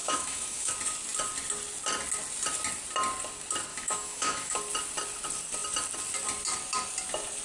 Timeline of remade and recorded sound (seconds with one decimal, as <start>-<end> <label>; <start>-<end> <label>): 0.0-0.7 remade; 0.7-3.7 recorded; 3.7-4.6 remade; 4.6-7.4 recorded